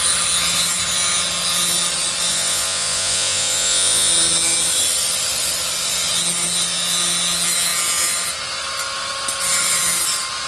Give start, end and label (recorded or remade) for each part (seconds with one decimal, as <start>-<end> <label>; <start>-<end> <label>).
0.0-2.3 recorded; 2.3-4.1 remade; 4.1-10.5 recorded